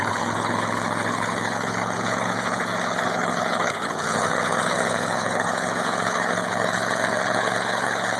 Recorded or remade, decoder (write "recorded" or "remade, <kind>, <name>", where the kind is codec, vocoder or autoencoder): remade, codec, HILCodec